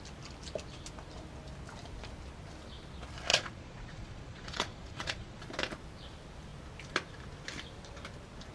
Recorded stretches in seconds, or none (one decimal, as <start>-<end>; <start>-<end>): 0.0-3.3; 5.4-8.5